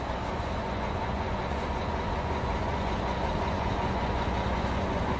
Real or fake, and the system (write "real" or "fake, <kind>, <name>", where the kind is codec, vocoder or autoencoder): fake, vocoder, Vocos